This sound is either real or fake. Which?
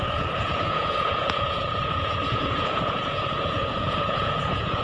fake